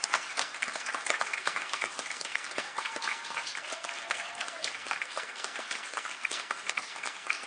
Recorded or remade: remade